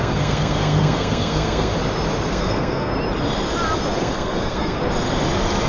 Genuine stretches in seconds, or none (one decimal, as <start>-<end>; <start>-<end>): 1.7-2.3; 2.9-4.0; 4.8-5.7